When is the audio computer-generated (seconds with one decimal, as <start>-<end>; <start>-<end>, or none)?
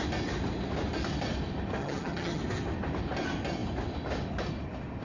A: 1.8-2.4